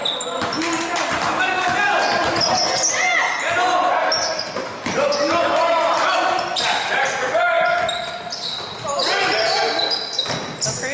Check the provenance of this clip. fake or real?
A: real